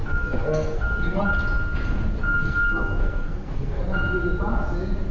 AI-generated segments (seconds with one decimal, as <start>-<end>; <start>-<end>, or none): 0.0-1.2; 2.3-3.8